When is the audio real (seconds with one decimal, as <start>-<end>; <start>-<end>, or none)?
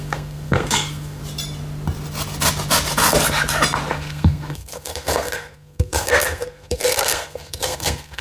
1.2-3.9